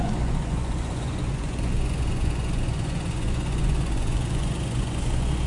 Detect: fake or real fake